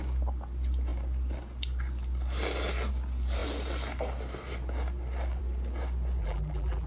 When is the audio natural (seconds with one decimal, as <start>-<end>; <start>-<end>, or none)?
0.0-6.2